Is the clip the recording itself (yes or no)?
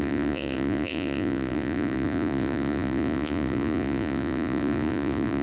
no